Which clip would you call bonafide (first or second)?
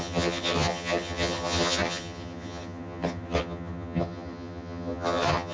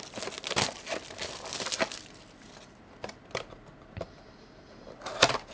second